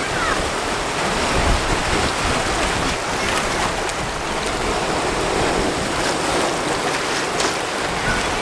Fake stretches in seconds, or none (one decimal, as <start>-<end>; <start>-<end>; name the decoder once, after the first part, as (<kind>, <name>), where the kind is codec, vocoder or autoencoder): none